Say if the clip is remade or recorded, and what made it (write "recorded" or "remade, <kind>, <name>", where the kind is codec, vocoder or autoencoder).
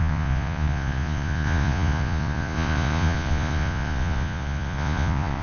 remade, vocoder, Vocos